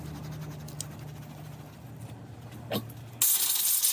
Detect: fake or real real